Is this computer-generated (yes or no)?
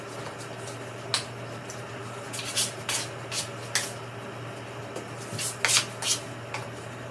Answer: no